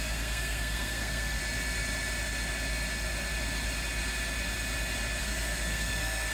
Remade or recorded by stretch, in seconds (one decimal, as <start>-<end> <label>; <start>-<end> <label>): 0.0-1.4 remade; 1.4-5.2 recorded; 5.2-6.3 remade